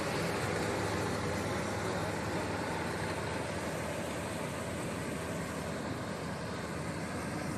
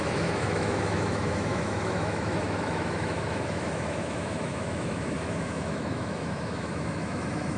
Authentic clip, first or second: first